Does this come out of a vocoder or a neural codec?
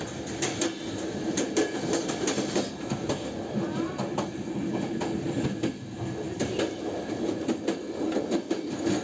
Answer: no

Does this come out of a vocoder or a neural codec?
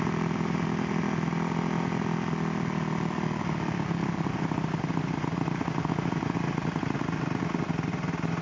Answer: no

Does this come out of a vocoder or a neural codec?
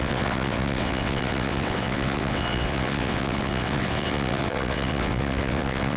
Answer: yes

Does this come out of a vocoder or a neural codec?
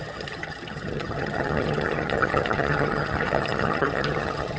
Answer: yes